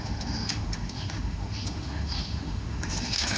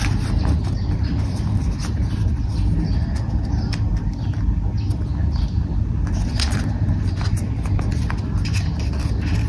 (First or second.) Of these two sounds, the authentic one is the second